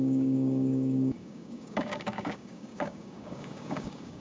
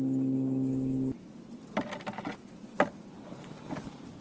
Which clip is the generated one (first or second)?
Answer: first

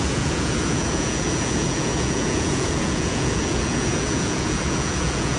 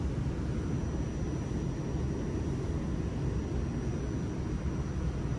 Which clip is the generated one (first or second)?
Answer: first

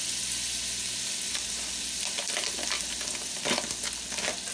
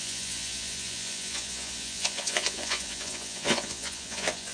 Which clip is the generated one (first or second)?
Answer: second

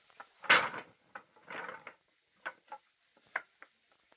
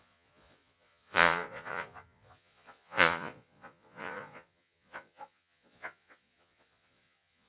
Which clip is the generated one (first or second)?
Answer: second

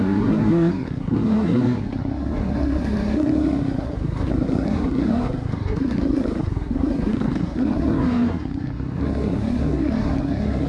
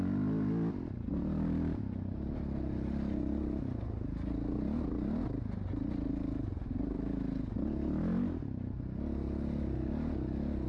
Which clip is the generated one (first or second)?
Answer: first